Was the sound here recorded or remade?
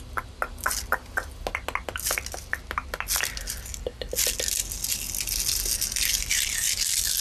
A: recorded